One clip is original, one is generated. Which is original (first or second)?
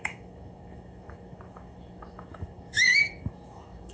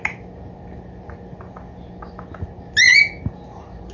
second